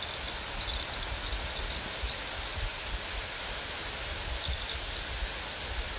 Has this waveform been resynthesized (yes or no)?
no